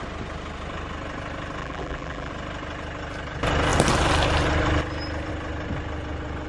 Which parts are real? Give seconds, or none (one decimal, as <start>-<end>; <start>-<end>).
0.0-1.6; 2.3-6.5